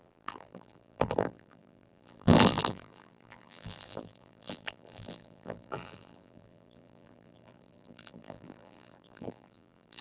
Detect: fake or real fake